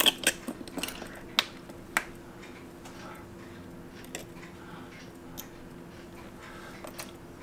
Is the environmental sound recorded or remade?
recorded